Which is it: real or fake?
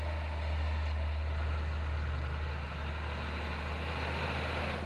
real